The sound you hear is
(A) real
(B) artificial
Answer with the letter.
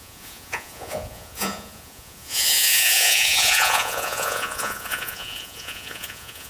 B